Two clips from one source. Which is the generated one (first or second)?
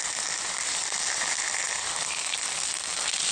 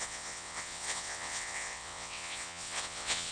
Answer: second